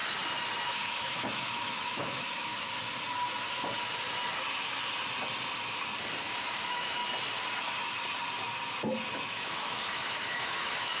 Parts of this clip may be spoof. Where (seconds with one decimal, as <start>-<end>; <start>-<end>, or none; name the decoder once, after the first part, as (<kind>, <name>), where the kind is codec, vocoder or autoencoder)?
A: 0.7-2.5 (autoencoder, DAC-VAE); 6.4-7.0; 9.1-11.0